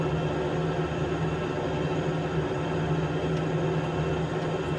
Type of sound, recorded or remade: recorded